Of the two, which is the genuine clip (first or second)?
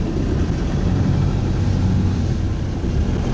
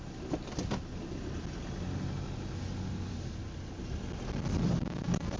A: second